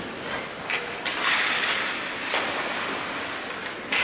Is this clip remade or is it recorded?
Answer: recorded